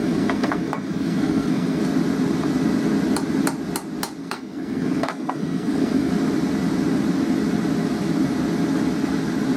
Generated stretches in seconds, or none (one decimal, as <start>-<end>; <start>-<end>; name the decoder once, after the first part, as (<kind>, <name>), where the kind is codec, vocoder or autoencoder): 0.0-1.8 (codec, SNAC); 4.2-6.1